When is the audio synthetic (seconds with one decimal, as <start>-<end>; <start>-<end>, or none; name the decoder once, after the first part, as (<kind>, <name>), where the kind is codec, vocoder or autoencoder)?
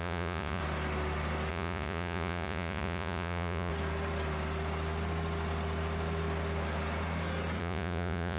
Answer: 0.0-0.6 (vocoder, Vocos); 1.5-3.7; 7.6-8.4